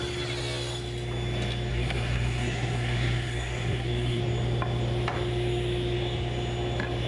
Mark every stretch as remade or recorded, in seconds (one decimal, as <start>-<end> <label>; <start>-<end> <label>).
0.0-1.7 recorded; 1.7-4.2 remade; 4.2-7.1 recorded